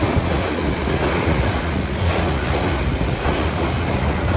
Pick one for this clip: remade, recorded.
remade